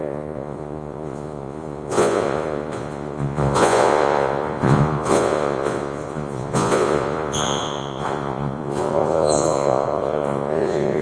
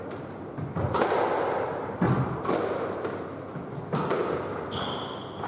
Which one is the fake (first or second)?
first